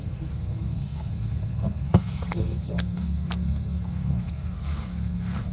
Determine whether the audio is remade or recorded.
remade